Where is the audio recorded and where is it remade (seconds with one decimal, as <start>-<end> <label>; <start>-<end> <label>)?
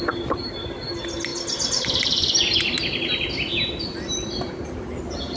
0.0-5.4 recorded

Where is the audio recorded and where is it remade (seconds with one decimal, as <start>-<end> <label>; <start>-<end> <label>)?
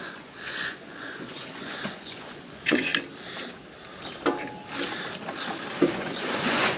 0.0-2.9 remade; 2.9-5.9 recorded; 5.9-6.8 remade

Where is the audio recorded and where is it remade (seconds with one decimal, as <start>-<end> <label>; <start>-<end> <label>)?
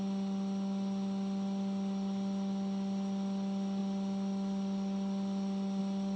0.0-6.2 recorded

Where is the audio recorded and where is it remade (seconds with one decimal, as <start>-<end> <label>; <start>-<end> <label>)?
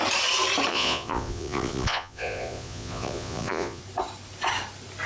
0.0-0.7 recorded; 0.7-3.8 remade; 3.8-5.1 recorded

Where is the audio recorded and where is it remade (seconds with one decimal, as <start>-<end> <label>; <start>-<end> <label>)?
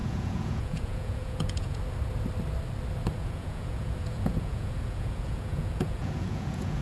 0.0-1.8 remade; 1.8-3.1 recorded; 3.1-6.8 remade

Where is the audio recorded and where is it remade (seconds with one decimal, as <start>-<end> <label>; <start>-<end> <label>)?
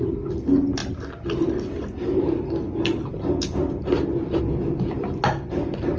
0.0-6.0 recorded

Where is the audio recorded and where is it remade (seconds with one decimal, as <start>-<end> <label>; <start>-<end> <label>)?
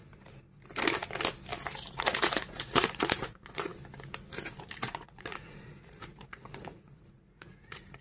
0.0-1.9 recorded; 1.9-3.7 remade; 3.7-4.6 recorded; 4.6-8.0 remade